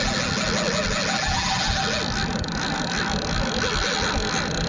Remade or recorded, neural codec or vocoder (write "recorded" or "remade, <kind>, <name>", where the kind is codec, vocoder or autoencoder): recorded